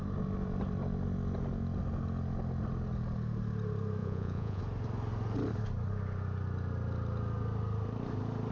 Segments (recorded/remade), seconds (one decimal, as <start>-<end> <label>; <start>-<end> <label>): 0.0-4.0 recorded; 4.0-4.6 remade; 4.6-8.5 recorded